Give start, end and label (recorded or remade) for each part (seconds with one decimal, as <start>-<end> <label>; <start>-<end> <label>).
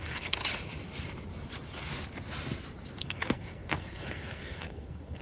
0.0-0.4 remade; 0.4-3.0 recorded; 3.0-5.2 remade